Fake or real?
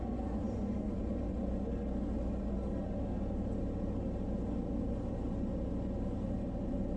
real